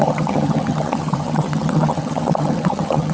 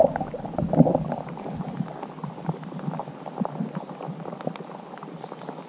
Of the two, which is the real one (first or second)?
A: second